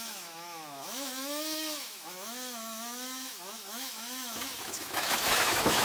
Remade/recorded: remade